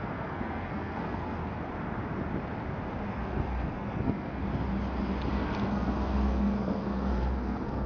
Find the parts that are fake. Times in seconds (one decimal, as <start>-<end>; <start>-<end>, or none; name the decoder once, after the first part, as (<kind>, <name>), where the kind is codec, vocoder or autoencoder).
0.0-1.4 (codec, SNAC); 3.1-4.4; 5.3-7.9